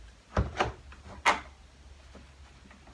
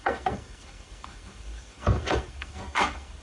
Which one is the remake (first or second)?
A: second